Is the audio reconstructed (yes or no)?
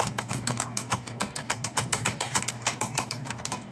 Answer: yes